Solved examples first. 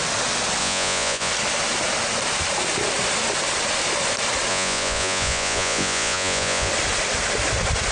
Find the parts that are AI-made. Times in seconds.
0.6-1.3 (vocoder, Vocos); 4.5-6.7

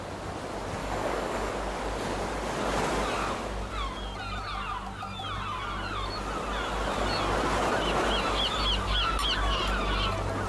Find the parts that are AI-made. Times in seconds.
0.8-1.5 (codec, DAC)